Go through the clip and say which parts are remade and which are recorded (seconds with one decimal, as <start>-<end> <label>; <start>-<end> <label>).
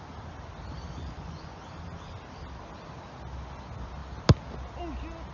0.0-1.0 recorded; 1.0-1.6 remade; 1.6-5.3 recorded